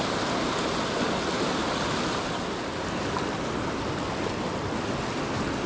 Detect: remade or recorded recorded